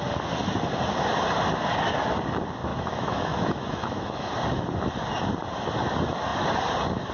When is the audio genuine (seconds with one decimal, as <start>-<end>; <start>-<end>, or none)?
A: 0.0-2.7; 4.3-7.1